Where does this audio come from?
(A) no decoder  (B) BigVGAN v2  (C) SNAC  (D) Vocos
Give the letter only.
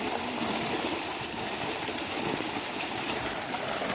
A